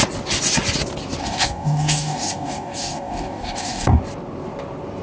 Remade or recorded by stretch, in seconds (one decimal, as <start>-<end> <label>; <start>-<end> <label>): 0.0-1.2 recorded; 1.2-4.0 remade; 4.0-5.0 recorded